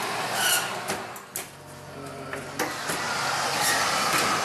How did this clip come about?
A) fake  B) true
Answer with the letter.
B